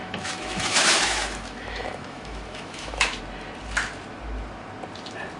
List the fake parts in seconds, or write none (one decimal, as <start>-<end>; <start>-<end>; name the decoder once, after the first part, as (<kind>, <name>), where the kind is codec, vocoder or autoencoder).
0.0-3.2 (autoencoder, DAC-VAE)